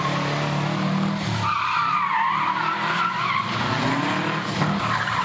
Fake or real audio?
real